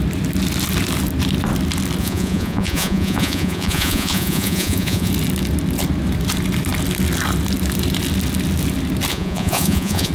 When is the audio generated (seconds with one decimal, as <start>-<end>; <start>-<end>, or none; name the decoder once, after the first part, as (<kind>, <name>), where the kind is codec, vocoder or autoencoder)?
2.0-5.1 (vocoder, Vocos); 9.1-10.1